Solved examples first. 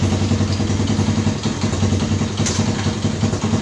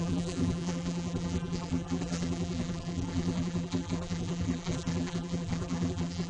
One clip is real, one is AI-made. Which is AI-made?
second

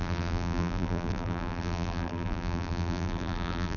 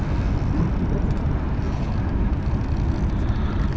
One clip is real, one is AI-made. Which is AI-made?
first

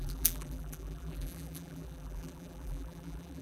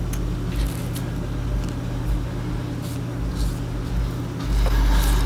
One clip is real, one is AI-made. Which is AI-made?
first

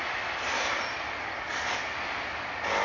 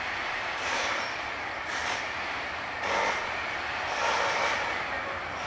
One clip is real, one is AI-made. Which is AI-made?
second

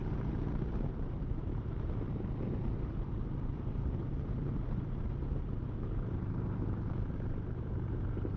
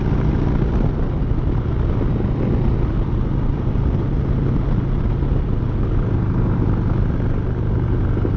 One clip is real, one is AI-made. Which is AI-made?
first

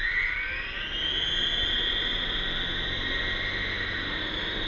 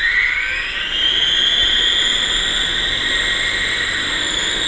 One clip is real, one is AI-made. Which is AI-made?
second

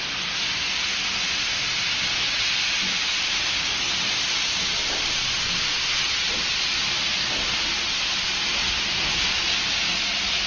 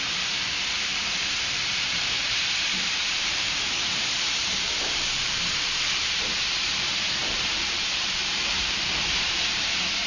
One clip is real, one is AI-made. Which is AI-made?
second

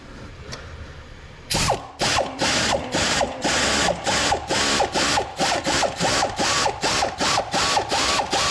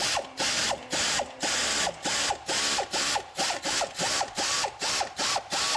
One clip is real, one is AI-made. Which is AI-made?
first